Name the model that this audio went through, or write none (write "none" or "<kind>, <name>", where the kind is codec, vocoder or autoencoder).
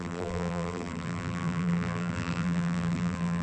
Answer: vocoder, BigVGAN v2